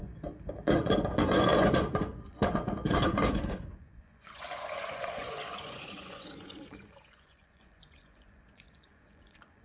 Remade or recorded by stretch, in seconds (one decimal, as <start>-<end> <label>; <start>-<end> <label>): 0.0-9.6 remade